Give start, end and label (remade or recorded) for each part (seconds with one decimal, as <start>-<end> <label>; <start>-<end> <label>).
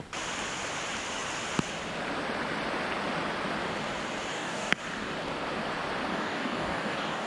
0.0-4.3 recorded; 4.3-4.8 remade; 4.8-6.1 recorded; 6.1-7.3 remade